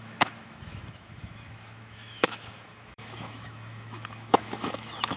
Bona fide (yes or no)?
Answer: no